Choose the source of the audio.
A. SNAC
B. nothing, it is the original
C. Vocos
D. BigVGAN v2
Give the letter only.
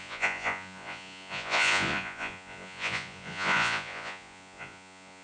C